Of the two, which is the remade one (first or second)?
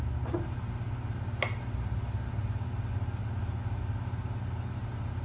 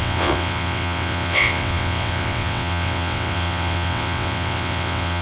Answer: second